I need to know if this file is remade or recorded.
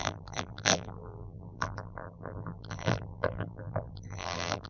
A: remade